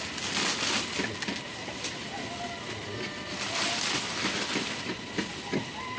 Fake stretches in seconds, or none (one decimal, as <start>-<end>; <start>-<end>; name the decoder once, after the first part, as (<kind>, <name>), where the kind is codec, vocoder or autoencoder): none